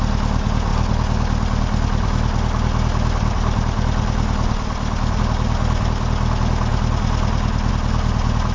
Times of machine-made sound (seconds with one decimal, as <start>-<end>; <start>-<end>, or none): none